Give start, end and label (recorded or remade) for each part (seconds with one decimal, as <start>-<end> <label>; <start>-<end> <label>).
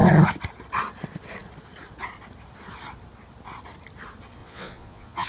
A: 0.0-4.4 recorded; 4.4-5.3 remade